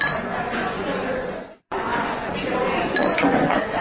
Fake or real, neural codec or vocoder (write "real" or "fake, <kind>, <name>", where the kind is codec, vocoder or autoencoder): fake, vocoder, Vocos